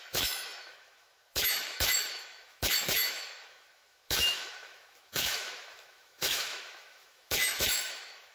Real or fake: fake